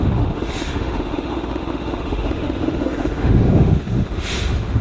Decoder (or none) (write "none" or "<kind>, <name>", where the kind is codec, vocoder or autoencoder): autoencoder, DAC-VAE